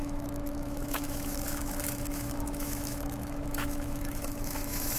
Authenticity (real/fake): fake